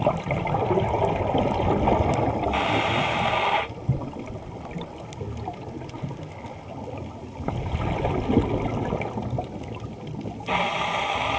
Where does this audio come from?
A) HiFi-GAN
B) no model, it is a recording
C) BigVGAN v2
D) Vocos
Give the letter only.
B